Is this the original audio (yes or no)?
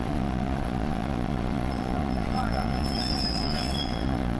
no